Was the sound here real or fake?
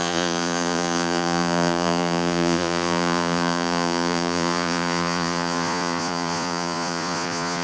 fake